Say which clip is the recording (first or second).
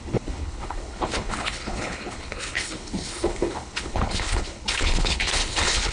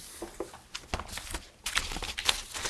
second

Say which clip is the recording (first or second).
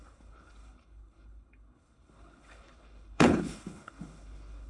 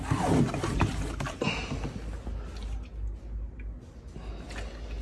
second